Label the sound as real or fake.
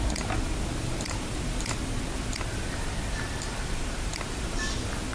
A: fake